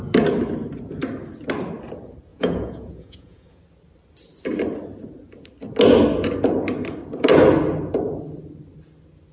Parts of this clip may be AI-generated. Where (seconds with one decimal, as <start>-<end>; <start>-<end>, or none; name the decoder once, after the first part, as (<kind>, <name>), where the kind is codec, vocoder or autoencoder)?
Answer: 2.3-3.6 (vocoder, Vocos)